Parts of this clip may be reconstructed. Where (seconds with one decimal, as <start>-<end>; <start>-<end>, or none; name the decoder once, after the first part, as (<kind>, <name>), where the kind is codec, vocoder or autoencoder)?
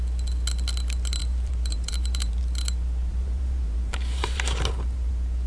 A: 1.2-2.4 (vocoder, BigVGAN v2); 3.1-5.1